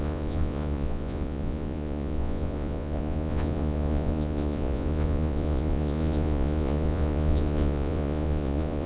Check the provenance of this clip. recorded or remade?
remade